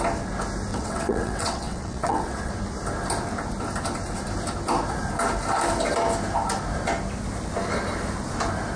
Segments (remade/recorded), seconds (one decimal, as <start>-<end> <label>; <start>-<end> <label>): 0.0-0.7 recorded; 0.7-2.5 remade; 2.5-8.8 recorded